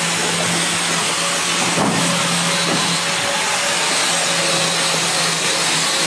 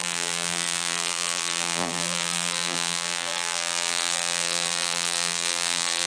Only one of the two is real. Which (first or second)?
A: first